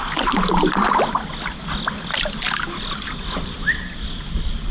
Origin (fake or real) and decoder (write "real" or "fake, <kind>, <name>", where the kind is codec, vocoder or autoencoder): real